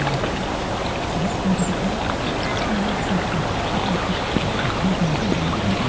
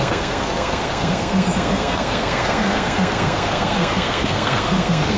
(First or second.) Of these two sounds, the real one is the first